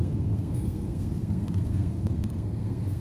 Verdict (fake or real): fake